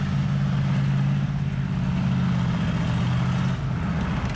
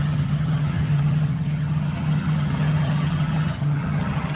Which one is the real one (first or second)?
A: first